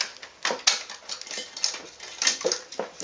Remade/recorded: recorded